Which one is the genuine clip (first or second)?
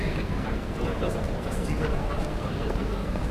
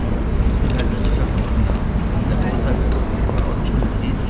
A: second